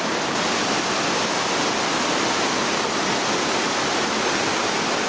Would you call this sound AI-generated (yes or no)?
no